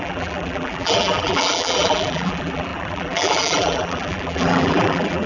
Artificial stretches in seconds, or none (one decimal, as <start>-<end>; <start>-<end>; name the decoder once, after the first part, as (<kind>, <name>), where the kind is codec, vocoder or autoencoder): 0.0-5.3 (vocoder, BigVGAN v2)